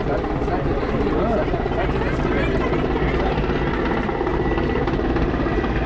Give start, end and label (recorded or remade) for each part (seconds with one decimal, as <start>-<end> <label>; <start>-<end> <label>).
0.0-5.9 recorded